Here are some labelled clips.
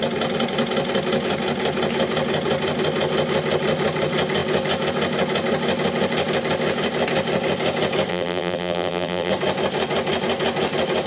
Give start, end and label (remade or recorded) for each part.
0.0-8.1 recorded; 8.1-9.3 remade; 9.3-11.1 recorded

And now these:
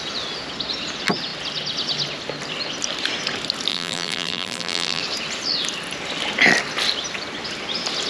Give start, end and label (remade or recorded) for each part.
0.0-3.7 recorded; 3.7-5.0 remade; 5.0-8.1 recorded